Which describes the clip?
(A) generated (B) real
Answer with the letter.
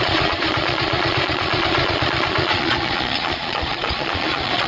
A